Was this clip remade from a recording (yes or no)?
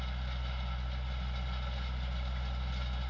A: no